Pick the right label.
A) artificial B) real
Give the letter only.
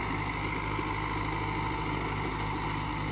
B